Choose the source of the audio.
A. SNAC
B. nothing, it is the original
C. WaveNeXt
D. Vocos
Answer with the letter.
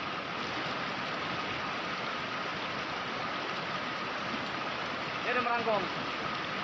B